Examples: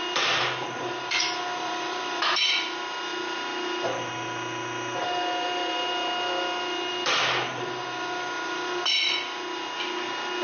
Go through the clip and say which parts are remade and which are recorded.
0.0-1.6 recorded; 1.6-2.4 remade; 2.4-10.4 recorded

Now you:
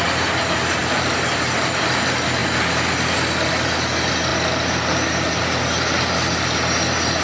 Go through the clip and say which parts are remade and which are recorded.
0.0-7.2 recorded

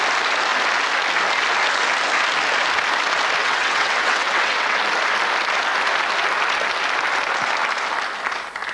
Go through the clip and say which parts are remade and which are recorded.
0.0-3.4 recorded; 3.4-4.8 remade; 4.8-8.7 recorded

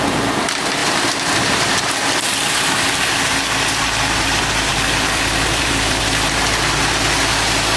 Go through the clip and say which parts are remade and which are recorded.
0.0-0.8 recorded; 0.8-2.3 remade; 2.3-4.7 recorded; 4.7-6.0 remade; 6.0-7.8 recorded

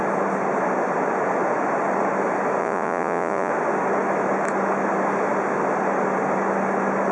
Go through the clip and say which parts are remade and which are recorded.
0.0-2.6 recorded; 2.6-3.5 remade; 3.5-7.1 recorded

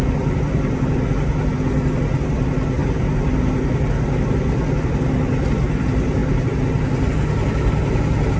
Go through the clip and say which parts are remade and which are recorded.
0.0-8.4 recorded